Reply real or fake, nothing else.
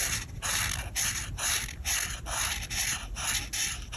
real